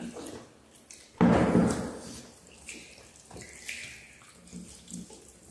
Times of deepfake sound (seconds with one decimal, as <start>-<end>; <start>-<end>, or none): none